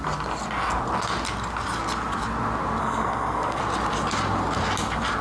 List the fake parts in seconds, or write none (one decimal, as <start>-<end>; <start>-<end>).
2.8-3.6